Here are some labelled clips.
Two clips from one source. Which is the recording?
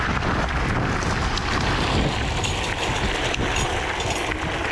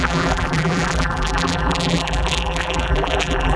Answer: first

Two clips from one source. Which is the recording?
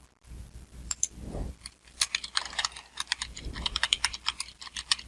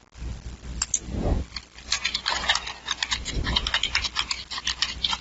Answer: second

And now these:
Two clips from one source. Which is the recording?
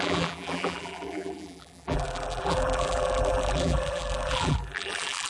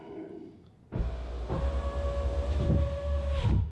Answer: second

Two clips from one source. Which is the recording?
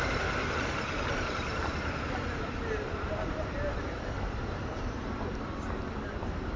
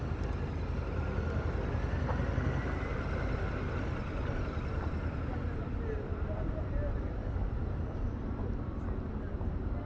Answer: second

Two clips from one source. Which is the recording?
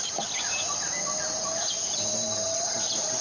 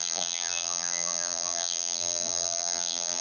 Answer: first